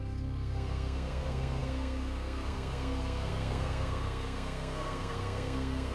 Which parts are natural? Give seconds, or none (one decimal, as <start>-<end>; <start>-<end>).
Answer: none